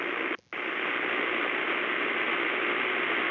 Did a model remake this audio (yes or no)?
no